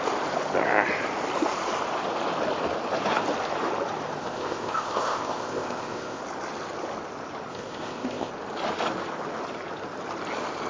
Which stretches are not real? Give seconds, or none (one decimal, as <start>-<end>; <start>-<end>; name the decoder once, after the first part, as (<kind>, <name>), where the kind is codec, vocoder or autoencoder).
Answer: 4.2-6.2 (codec, ZipCodec); 7.5-8.3